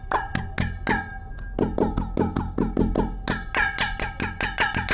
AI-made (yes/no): no